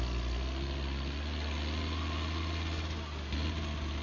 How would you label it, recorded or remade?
recorded